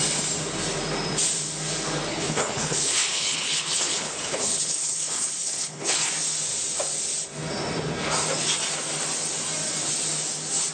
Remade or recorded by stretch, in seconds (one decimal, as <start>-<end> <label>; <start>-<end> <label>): 0.0-2.1 recorded; 2.1-6.1 remade; 6.1-10.7 recorded